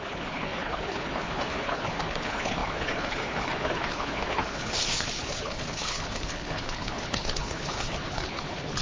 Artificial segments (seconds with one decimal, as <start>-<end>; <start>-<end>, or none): 0.0-8.8